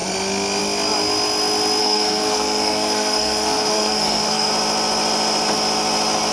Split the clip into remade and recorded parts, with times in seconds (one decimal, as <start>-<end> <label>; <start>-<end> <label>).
0.0-1.8 recorded; 1.8-4.5 remade; 4.5-6.3 recorded